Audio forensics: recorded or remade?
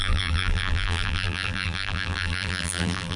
remade